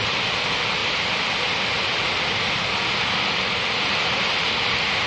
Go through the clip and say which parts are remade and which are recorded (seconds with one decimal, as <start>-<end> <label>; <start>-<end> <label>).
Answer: 0.0-0.8 remade; 0.8-3.5 recorded; 3.5-5.1 remade